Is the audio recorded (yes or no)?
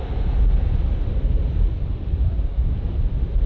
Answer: yes